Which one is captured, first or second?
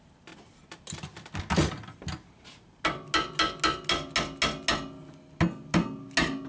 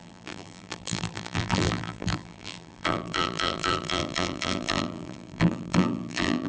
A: first